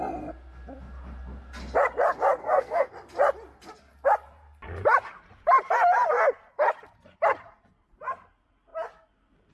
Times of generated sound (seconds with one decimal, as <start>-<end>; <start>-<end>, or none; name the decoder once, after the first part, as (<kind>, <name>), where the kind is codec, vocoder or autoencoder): 2.4-2.9 (codec, SNAC)